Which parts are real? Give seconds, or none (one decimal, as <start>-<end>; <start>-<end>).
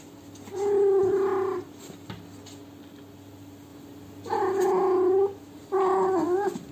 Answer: 0.0-6.7